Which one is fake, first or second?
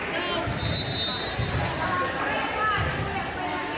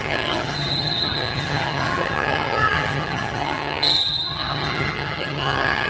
second